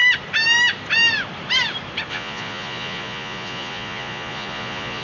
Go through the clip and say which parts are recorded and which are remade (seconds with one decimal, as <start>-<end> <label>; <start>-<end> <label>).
0.0-2.1 recorded; 2.1-5.0 remade